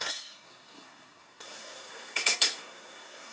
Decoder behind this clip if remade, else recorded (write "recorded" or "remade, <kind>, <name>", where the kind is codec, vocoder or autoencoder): remade, codec, SNAC